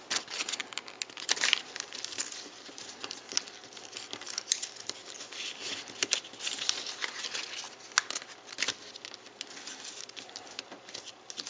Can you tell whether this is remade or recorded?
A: recorded